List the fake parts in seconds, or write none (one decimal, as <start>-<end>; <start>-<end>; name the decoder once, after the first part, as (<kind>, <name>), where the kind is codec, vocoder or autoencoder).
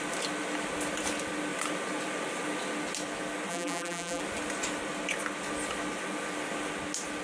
3.5-4.2 (vocoder, BigVGAN v2)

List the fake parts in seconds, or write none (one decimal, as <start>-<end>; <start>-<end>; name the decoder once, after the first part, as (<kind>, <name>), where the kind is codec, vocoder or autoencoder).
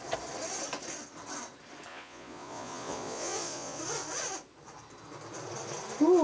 1.9-3.8 (vocoder, Vocos)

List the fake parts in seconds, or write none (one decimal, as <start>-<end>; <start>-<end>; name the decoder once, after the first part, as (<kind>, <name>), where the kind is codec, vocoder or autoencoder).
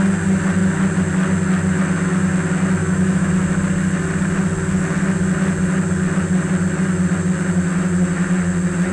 2.8-3.3 (autoencoder, DAC-VAE)